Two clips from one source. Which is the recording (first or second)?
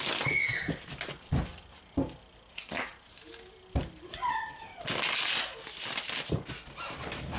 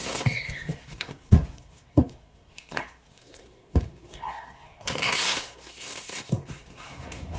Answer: first